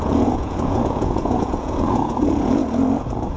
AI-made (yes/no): yes